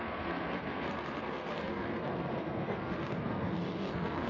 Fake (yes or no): yes